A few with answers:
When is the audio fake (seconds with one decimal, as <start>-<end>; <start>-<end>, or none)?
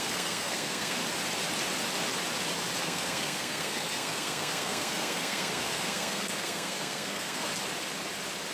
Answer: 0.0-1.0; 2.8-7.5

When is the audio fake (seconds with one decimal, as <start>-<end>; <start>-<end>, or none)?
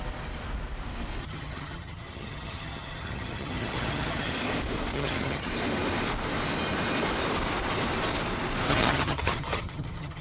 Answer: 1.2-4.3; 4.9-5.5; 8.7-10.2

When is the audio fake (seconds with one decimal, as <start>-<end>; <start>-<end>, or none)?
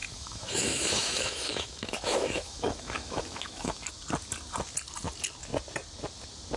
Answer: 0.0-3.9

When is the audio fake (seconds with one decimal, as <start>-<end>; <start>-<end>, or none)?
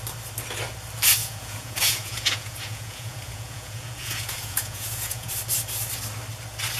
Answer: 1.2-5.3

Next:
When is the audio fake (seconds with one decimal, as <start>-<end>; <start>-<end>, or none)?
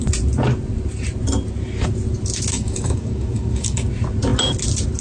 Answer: 2.5-3.9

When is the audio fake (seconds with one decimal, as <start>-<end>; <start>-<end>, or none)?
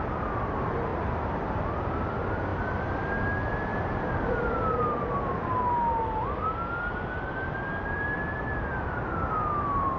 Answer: none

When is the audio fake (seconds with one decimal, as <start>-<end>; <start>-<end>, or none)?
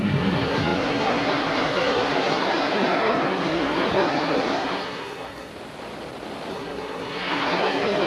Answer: 0.0-5.5; 6.5-8.1